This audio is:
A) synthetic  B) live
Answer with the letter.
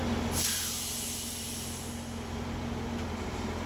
B